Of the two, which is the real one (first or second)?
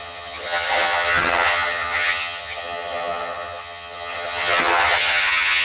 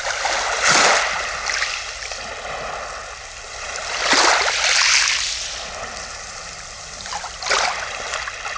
second